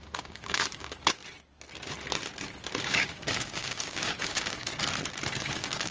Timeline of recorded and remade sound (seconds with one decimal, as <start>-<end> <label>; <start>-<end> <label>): 0.0-1.2 remade; 1.2-2.8 recorded; 2.8-4.7 remade; 4.7-5.4 recorded; 5.4-5.9 remade